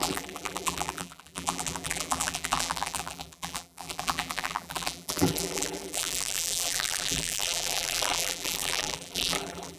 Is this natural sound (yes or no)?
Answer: no